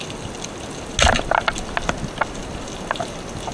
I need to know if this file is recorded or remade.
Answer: recorded